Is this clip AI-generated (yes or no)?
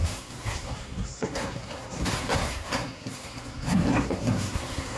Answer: yes